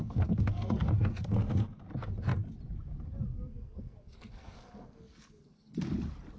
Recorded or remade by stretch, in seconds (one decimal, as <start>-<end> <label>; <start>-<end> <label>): 0.0-1.8 remade; 1.8-3.3 recorded; 3.3-5.8 remade; 5.8-6.4 recorded